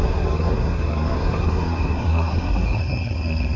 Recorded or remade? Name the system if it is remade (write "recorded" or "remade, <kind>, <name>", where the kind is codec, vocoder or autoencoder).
remade, codec, SNAC